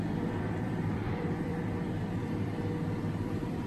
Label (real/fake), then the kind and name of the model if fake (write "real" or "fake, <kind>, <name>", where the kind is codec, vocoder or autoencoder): fake, vocoder, BigVGAN v2